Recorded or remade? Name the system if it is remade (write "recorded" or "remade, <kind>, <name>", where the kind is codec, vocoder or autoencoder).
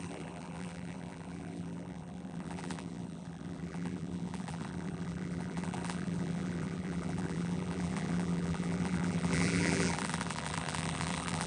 remade, vocoder, BigVGAN v2